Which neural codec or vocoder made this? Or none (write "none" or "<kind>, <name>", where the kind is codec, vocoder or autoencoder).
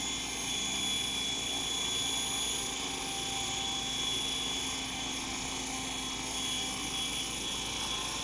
none